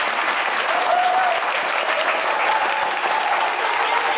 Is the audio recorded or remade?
recorded